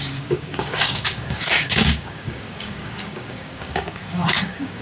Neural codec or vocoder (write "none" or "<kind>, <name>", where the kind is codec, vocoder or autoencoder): codec, DAC